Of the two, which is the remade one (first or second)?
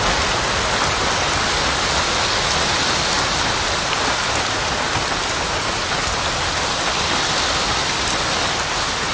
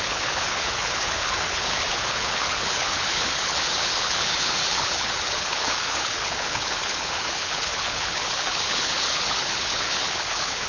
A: second